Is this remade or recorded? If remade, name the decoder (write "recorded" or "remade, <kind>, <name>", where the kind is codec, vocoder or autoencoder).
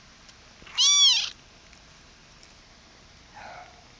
recorded